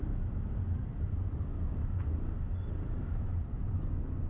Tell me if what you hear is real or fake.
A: real